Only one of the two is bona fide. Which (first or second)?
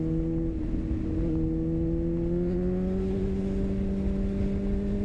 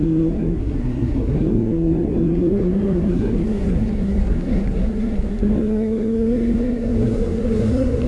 first